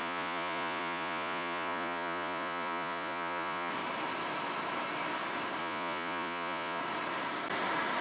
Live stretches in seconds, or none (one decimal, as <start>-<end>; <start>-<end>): 3.7-5.6; 6.8-8.0